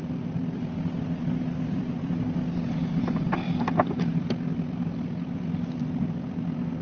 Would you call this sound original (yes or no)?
yes